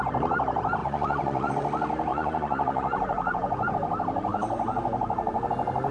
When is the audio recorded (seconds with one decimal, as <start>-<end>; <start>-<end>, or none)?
0.0-0.8; 1.5-2.1; 3.7-4.3; 5.5-5.9